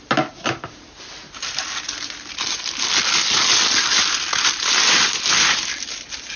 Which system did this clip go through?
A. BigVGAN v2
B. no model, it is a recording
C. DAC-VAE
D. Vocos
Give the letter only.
B